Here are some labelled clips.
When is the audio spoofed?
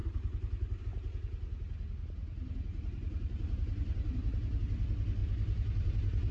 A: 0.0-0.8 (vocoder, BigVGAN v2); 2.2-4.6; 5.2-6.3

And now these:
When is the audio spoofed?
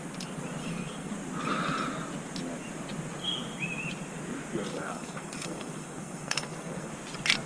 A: 0.6-1.1 (codec, SNAC); 4.7-6.9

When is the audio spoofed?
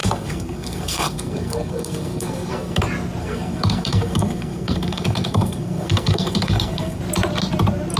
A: 0.0-2.8 (codec, SNAC); 3.2-7.0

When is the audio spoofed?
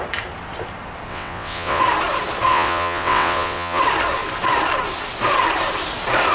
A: 1.1-1.8 (vocoder, WaveNeXt); 2.5-3.8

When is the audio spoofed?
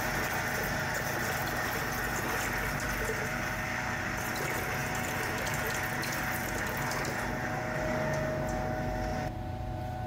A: 3.3-4.3 (vocoder, BigVGAN v2); 4.8-5.8; 9.1-10.1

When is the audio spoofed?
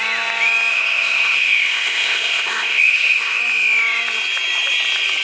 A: 0.7-3.4 (codec, ZipCodec)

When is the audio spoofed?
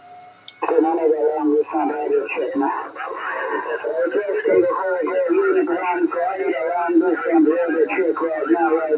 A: none